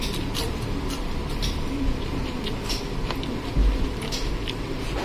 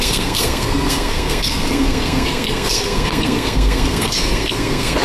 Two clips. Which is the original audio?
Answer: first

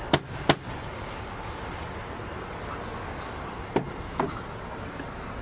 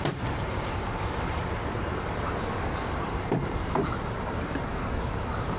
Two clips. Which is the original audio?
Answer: first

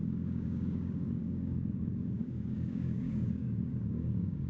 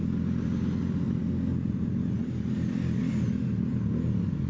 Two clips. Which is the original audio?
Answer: second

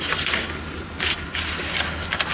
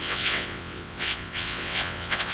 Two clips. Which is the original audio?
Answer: first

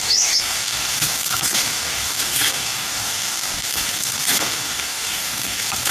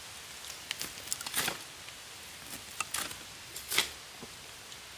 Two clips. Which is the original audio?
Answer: second